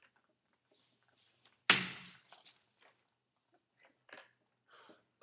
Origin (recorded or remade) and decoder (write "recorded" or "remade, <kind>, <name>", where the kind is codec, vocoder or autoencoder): recorded